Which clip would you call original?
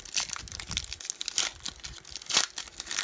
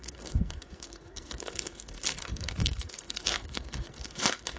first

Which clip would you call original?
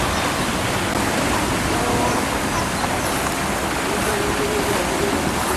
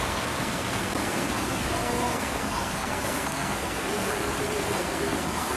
first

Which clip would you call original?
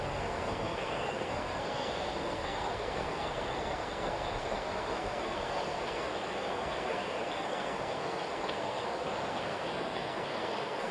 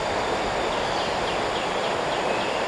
second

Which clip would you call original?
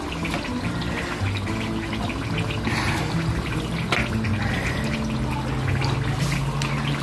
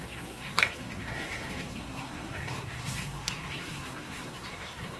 first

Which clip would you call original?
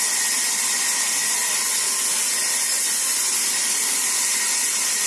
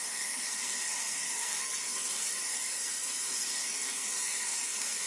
first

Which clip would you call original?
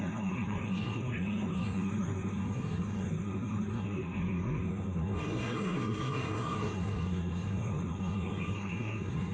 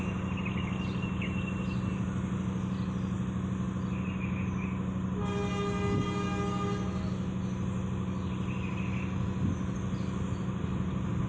second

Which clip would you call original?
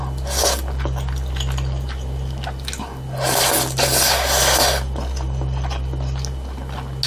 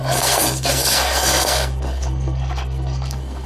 first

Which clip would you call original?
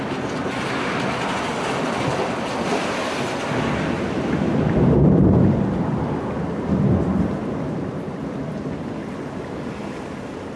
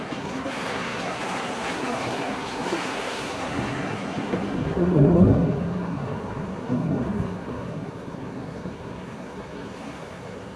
first